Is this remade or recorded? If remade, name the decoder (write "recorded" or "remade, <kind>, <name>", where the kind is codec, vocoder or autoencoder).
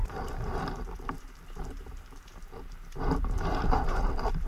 remade, vocoder, BigVGAN v2